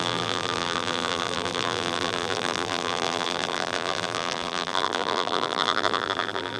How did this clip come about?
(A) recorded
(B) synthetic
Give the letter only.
B